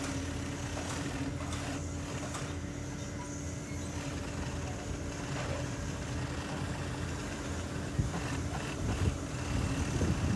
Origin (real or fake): real